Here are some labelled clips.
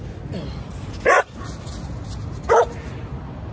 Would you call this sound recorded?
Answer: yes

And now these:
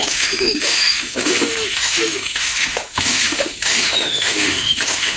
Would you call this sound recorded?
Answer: no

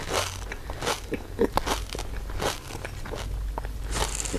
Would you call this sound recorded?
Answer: yes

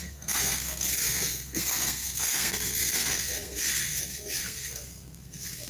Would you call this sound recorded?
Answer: no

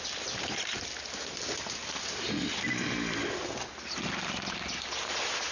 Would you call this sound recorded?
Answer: yes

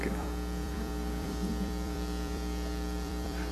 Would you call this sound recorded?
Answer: no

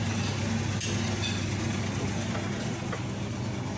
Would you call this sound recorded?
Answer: yes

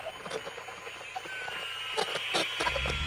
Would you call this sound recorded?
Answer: yes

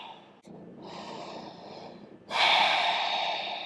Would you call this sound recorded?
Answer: yes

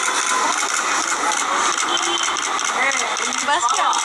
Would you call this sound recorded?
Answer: yes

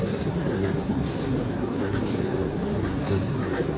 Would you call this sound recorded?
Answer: no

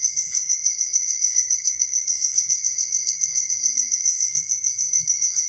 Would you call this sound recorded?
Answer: no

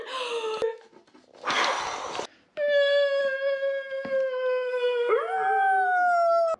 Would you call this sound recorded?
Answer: yes